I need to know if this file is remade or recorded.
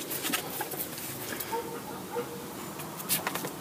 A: recorded